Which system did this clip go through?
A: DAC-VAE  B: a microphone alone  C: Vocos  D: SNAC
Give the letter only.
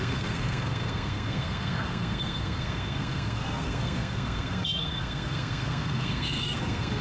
D